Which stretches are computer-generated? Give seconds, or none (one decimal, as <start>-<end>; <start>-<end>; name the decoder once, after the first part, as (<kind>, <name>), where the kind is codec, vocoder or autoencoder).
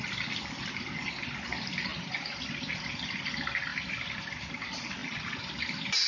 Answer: 1.9-2.9 (vocoder, BigVGAN v2); 3.7-4.5; 5.0-5.5